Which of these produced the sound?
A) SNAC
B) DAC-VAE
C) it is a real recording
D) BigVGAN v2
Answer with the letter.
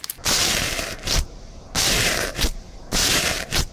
D